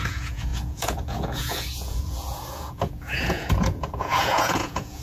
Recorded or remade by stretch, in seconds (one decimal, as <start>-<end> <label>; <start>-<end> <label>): 0.0-5.0 remade